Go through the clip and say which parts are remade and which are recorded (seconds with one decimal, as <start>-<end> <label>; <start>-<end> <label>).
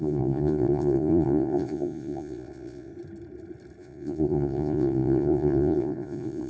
0.0-2.9 remade; 2.9-3.8 recorded; 3.8-6.5 remade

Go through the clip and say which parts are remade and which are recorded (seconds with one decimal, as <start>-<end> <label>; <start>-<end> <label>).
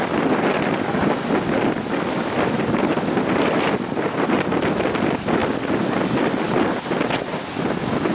0.0-8.1 recorded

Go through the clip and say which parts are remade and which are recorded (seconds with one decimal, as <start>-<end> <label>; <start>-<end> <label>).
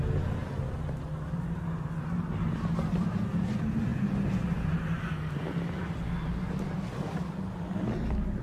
0.0-8.4 recorded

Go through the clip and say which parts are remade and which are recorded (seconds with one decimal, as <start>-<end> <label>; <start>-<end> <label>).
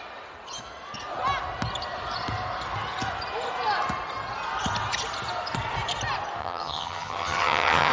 0.0-6.4 recorded; 6.4-7.9 remade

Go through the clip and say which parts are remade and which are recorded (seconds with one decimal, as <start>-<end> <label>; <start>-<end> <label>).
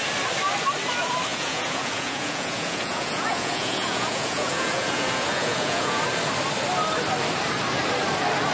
0.0-1.3 recorded; 1.3-6.0 remade; 6.0-8.5 recorded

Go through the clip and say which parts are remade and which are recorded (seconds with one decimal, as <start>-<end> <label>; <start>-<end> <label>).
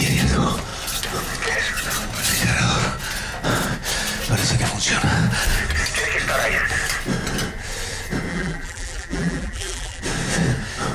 0.0-8.3 recorded; 8.3-10.0 remade; 10.0-10.9 recorded